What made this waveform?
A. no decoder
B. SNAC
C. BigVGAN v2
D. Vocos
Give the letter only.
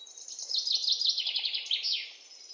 C